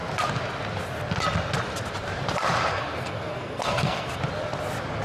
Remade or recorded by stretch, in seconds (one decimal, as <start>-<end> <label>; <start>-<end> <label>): 0.0-2.7 recorded; 2.7-4.2 remade; 4.2-5.0 recorded